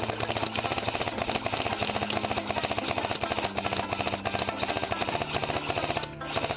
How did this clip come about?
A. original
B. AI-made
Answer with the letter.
A